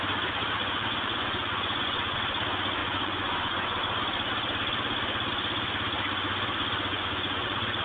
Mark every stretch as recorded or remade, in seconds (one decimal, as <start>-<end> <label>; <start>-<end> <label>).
0.0-0.6 recorded; 0.6-2.2 remade; 2.2-2.8 recorded; 2.8-3.8 remade; 3.8-6.9 recorded; 6.9-7.8 remade

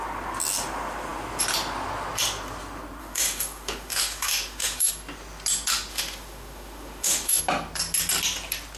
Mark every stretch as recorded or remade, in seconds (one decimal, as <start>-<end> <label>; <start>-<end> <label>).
0.0-3.0 recorded; 3.0-4.9 remade; 4.9-5.9 recorded; 5.9-7.4 remade; 7.4-8.8 recorded

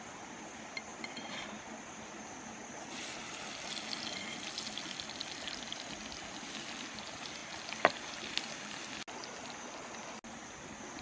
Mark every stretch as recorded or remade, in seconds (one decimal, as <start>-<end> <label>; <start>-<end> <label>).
0.0-11.0 recorded

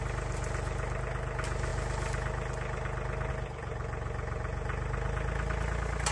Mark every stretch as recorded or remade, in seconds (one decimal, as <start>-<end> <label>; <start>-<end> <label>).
0.0-6.1 recorded

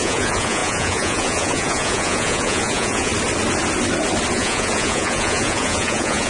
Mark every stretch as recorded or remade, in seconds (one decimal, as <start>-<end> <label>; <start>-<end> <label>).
0.0-3.1 remade; 3.1-4.3 recorded; 4.3-6.3 remade

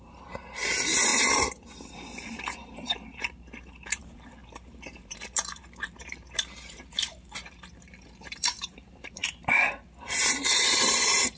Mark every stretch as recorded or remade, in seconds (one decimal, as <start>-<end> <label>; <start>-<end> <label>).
0.0-1.1 remade; 1.1-1.9 recorded; 1.9-11.4 remade

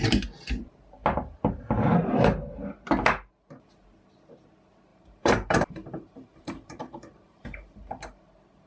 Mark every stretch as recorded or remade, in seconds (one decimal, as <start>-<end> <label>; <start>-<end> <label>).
0.0-4.9 recorded; 4.9-8.2 remade; 8.2-8.7 recorded

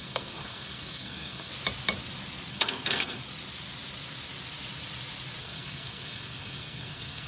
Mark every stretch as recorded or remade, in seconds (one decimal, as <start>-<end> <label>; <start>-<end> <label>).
0.0-1.5 remade; 1.5-2.5 recorded; 2.5-3.2 remade; 3.2-5.4 recorded; 5.4-7.3 remade